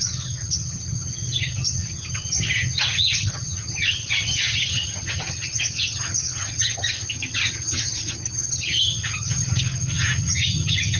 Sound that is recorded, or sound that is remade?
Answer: remade